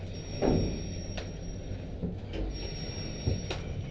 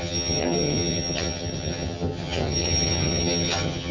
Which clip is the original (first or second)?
first